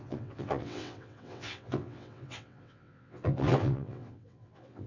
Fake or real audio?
fake